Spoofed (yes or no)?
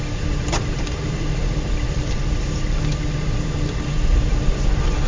no